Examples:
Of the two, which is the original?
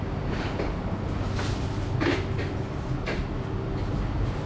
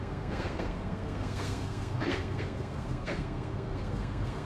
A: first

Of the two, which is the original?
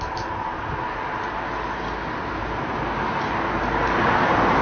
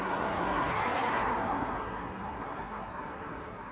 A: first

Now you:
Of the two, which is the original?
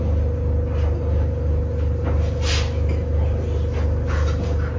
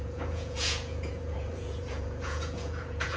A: first